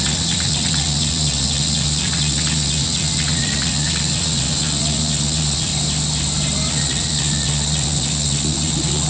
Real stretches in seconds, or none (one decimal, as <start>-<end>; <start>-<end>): 5.7-6.7